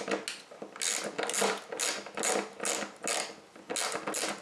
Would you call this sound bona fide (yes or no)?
yes